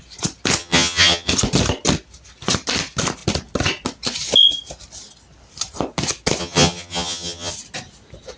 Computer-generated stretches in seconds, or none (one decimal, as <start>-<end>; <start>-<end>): 0.6-1.3; 6.4-7.5